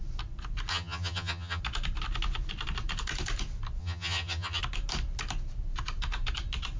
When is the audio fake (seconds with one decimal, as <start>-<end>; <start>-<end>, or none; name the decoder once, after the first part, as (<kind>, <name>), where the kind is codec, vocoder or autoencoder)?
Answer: 0.7-1.6 (vocoder, HiFi-GAN); 3.8-4.6